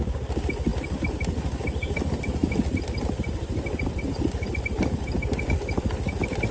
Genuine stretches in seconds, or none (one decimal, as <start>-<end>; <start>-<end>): 0.0-6.5